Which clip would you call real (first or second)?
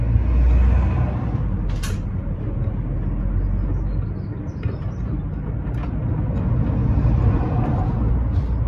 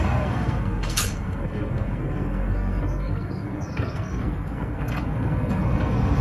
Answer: first